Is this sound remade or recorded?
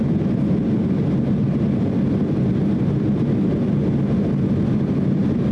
recorded